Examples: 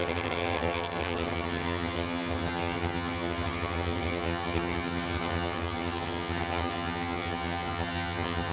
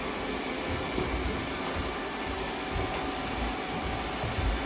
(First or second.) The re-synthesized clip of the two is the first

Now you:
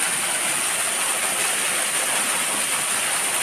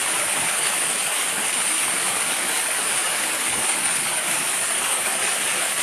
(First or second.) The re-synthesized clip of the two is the second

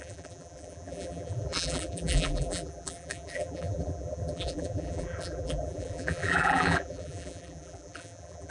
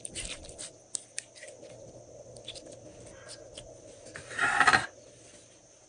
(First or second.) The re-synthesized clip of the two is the first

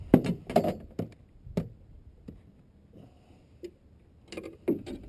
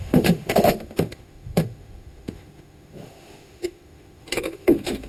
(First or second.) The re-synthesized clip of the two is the second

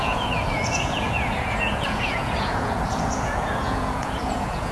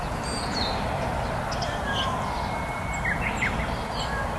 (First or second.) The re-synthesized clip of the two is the first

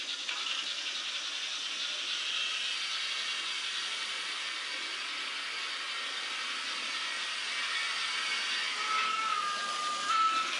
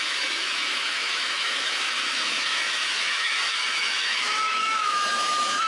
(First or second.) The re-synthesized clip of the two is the second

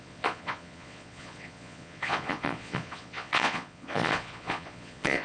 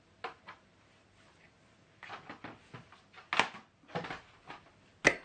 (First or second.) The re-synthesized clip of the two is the first